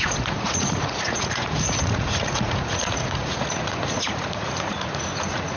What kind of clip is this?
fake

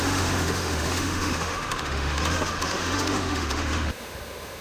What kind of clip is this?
fake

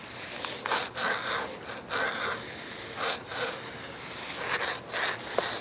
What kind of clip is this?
real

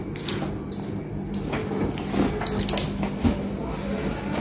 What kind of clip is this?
real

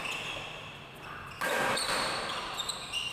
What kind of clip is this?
real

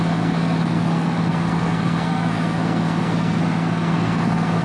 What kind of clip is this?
fake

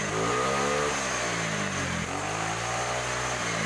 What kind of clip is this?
real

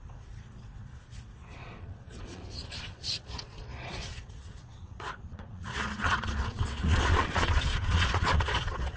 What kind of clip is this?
fake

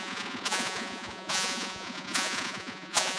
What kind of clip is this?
fake